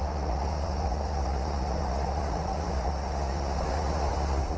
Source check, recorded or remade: remade